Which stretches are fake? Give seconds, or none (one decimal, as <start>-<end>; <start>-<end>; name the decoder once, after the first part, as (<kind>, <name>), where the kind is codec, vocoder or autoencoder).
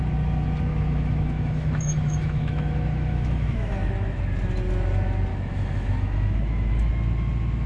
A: 0.7-4.2 (autoencoder, DAC-VAE); 5.3-6.9